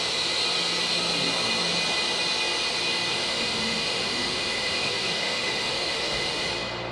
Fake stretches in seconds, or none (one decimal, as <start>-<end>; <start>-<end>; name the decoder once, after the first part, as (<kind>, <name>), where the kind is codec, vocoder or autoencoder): 3.1-6.5 (autoencoder, DAC-VAE)